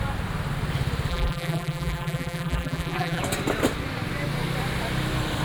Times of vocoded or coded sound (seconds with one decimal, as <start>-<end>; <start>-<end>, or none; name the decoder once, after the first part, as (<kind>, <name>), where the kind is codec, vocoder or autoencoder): 1.1-3.2 (vocoder, BigVGAN v2)